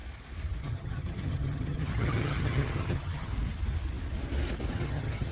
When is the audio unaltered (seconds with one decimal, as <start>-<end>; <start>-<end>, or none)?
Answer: 0.0-0.6; 3.3-4.7